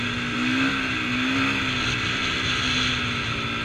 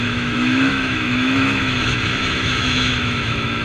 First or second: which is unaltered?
first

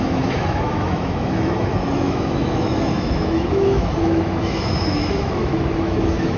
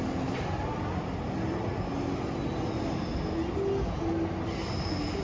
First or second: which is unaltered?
second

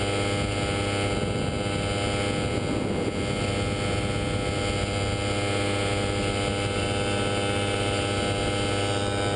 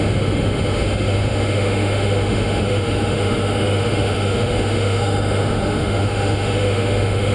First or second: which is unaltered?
first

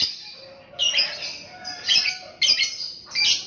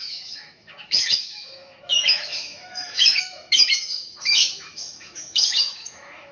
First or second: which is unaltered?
first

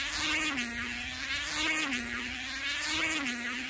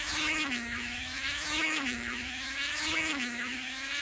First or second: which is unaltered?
first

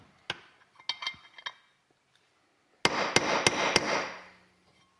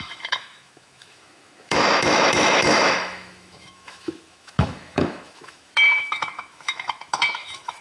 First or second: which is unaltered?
first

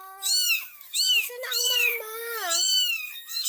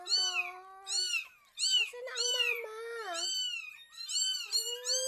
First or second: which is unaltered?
second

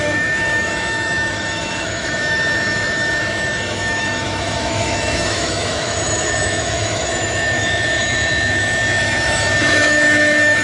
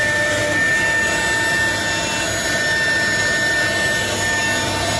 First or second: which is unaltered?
second